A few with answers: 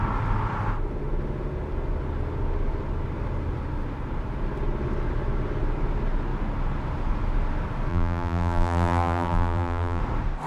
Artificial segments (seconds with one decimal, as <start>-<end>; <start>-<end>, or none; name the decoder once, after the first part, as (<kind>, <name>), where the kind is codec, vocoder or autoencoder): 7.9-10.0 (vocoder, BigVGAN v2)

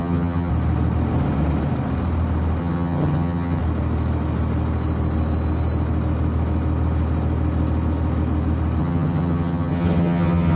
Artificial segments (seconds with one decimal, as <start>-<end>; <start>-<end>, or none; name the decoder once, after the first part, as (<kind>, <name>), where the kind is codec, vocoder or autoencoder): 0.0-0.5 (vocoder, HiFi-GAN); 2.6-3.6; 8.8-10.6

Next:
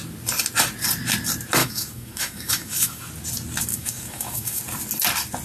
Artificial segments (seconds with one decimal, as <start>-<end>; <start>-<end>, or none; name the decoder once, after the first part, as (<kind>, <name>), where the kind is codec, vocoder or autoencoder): 1.6-3.1 (autoencoder, DAC-VAE); 3.7-4.6